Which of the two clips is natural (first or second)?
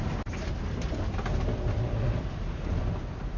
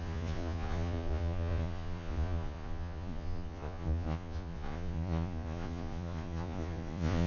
first